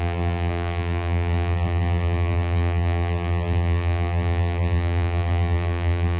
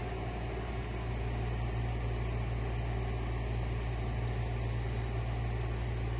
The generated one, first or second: first